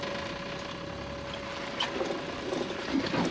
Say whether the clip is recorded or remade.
recorded